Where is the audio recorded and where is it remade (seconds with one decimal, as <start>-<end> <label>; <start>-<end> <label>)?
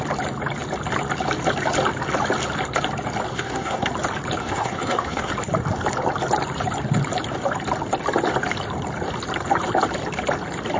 0.0-3.3 recorded; 3.3-3.9 remade; 3.9-4.4 recorded; 4.4-5.3 remade; 5.3-10.8 recorded